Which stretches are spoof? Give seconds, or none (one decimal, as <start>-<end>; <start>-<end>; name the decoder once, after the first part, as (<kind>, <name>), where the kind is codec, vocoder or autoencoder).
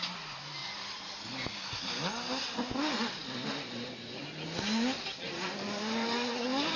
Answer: none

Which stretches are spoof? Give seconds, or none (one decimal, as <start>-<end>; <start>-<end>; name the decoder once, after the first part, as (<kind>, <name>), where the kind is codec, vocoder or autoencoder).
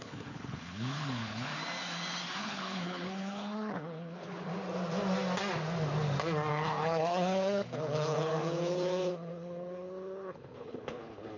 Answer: 0.0-1.5 (codec, HILCodec); 2.4-4.5; 6.5-11.4